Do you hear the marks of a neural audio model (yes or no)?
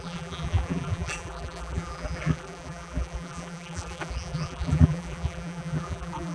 yes